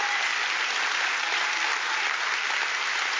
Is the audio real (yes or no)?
yes